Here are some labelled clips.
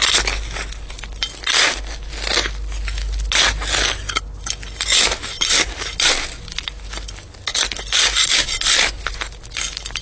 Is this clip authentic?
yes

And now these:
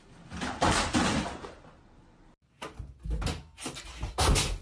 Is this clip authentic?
yes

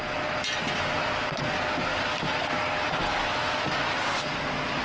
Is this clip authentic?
yes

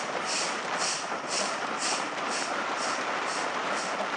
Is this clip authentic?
yes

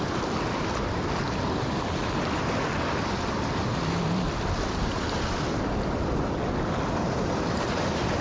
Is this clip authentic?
yes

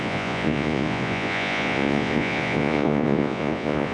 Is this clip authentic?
no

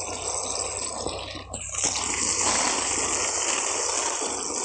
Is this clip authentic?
yes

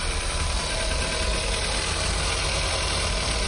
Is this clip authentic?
yes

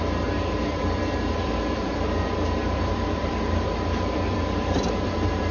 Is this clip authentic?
no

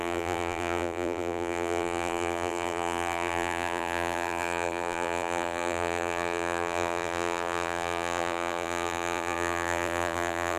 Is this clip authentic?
no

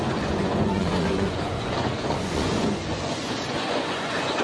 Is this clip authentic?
no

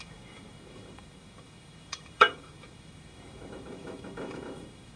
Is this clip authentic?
no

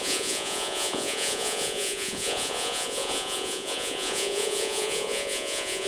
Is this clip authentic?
no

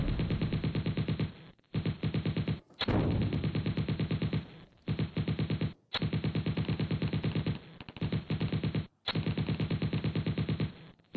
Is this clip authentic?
yes